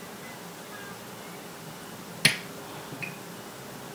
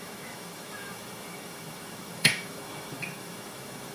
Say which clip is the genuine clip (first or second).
first